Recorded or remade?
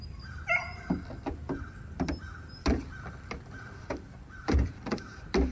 remade